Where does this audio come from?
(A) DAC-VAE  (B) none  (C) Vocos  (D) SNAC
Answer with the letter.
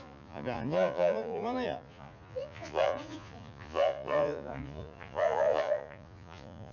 C